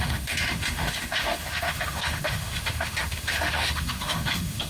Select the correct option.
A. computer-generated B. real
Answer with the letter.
A